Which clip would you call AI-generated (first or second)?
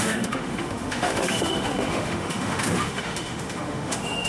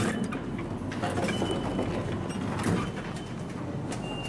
first